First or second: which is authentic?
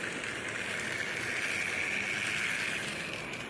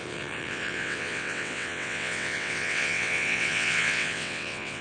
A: first